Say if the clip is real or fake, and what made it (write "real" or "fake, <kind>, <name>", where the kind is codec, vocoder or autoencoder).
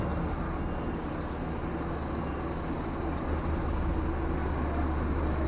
real